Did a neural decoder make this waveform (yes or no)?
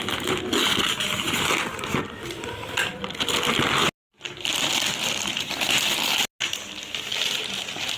no